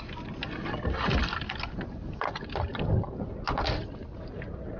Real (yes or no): yes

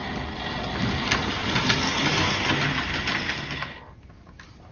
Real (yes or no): yes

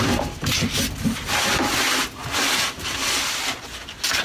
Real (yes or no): yes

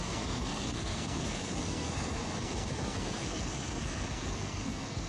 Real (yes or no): no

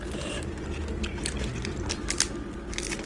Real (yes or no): yes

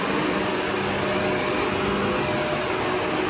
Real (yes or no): yes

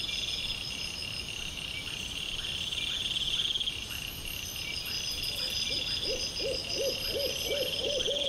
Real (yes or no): yes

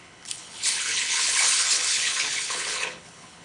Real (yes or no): no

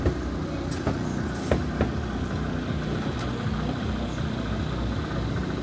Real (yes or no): yes